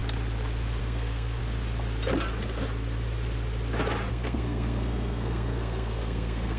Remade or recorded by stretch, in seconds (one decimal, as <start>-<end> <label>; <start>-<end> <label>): 0.0-0.8 recorded; 0.8-1.4 remade; 1.4-4.1 recorded; 4.1-6.6 remade